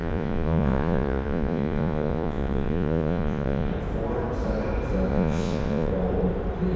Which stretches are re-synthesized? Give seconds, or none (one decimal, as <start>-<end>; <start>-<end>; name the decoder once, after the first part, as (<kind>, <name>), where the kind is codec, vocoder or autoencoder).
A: 0.0-3.7 (vocoder, Vocos); 5.1-5.9